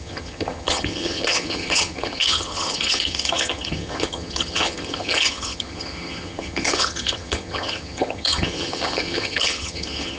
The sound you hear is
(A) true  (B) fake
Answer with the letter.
B